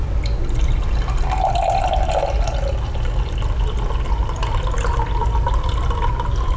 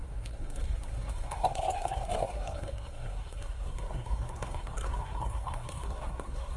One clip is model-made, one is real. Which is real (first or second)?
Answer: first